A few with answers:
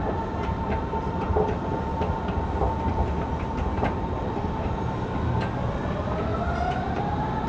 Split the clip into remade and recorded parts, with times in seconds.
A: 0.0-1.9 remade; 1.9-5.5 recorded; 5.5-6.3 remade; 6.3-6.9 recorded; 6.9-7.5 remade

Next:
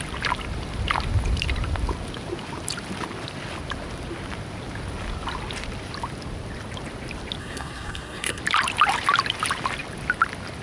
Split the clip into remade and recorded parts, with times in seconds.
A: 0.0-7.4 recorded; 7.4-8.4 remade; 8.4-10.6 recorded

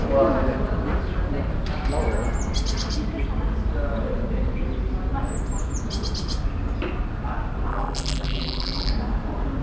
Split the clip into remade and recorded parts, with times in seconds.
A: 0.0-7.7 recorded; 7.7-8.9 remade; 8.9-9.6 recorded

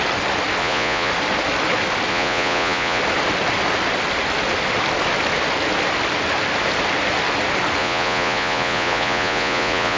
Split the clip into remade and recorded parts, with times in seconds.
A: 0.0-0.6 recorded; 0.6-1.1 remade; 1.1-2.1 recorded; 2.1-3.0 remade; 3.0-7.8 recorded; 7.8-10.0 remade

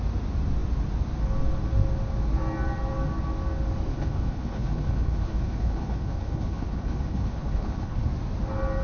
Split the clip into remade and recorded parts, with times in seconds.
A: 0.0-3.9 recorded; 3.9-8.1 remade; 8.1-8.8 recorded